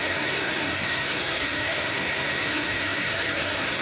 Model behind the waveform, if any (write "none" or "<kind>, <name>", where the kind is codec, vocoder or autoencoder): codec, SNAC